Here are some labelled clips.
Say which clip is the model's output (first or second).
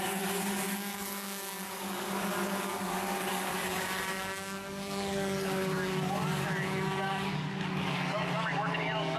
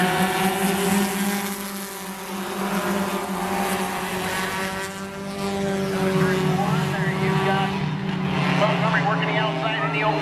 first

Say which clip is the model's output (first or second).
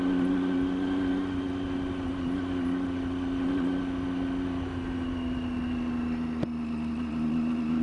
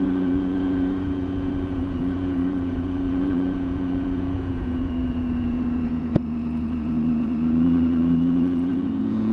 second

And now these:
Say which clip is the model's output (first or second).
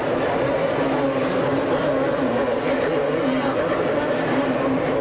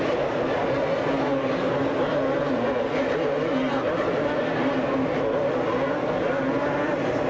first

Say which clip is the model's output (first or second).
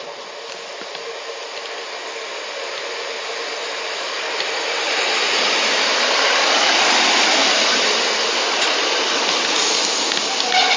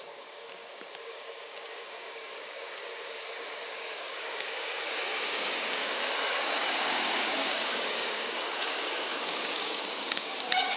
second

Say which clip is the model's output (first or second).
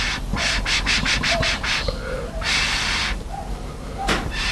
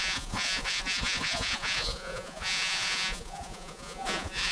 second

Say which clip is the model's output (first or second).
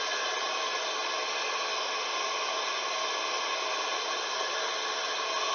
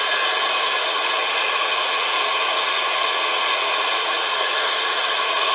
second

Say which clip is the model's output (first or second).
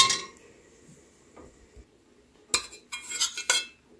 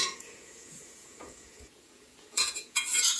second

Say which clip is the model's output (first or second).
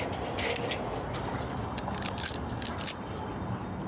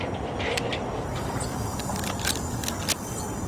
second